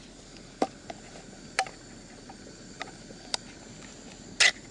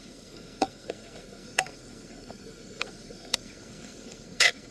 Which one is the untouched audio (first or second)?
first